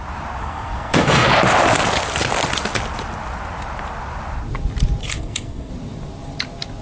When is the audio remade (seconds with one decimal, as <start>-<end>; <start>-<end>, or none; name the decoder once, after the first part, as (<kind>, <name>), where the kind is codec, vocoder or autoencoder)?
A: 0.4-1.3 (codec, SNAC); 5.0-5.7